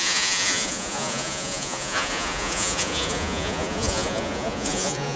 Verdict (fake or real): fake